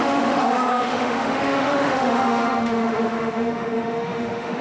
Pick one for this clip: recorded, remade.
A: remade